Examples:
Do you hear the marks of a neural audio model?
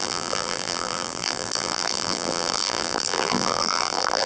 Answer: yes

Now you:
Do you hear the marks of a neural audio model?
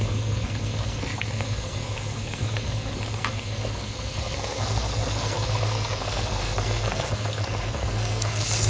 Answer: yes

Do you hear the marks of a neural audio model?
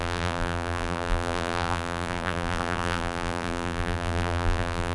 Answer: yes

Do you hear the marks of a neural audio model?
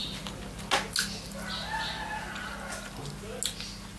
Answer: no